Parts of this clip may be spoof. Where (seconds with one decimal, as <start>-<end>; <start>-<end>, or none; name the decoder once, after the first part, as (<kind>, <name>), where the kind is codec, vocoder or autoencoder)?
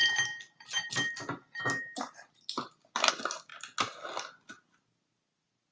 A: none